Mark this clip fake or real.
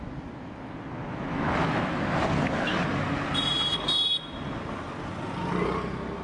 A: real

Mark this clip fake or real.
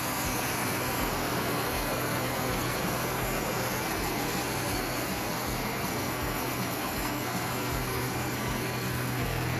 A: fake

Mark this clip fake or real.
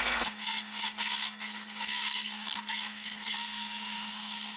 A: fake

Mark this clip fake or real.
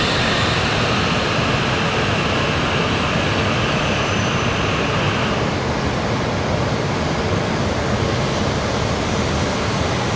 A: real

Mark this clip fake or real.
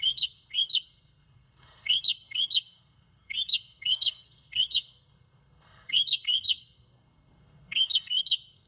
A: fake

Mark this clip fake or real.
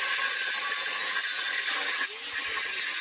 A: real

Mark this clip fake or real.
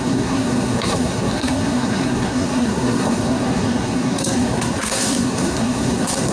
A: fake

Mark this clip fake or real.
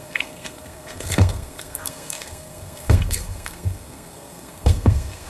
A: fake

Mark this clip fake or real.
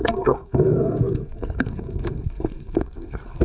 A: fake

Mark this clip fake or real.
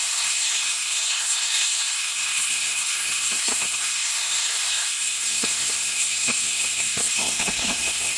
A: fake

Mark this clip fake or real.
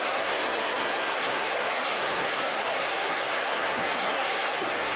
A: fake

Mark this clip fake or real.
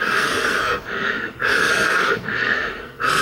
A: fake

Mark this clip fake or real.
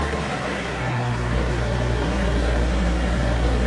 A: fake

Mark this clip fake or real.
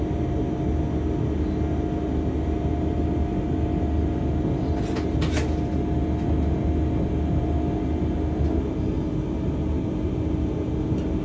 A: real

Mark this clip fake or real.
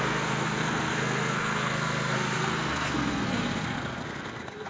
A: fake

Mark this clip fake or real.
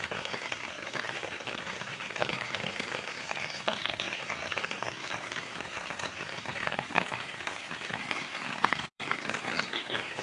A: fake